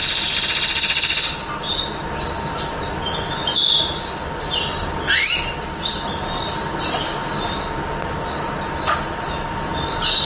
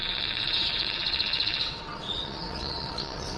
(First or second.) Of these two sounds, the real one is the first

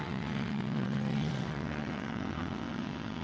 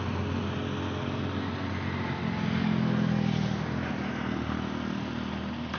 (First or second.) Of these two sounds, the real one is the second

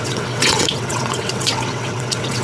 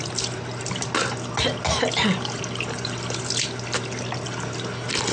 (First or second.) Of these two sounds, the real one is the second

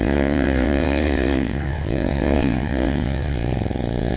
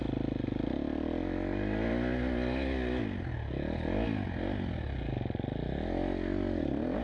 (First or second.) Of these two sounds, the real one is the second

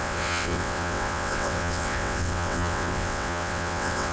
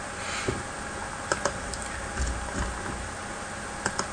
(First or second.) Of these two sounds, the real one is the second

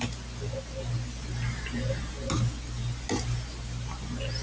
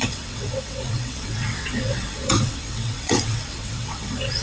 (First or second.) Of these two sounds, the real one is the first